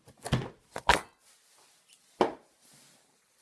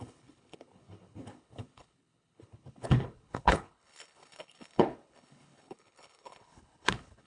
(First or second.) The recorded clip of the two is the first